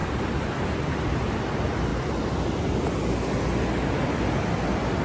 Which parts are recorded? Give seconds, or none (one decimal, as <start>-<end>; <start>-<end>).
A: 0.0-5.0